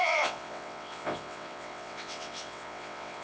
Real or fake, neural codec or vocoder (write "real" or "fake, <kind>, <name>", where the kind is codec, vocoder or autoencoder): fake, vocoder, WaveNeXt